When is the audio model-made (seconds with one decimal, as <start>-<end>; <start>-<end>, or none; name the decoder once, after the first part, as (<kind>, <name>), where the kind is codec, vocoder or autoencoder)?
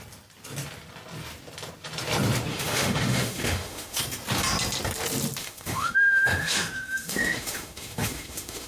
2.5-4.0 (autoencoder, DAC-VAE); 5.4-8.7